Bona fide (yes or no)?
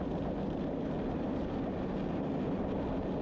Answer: yes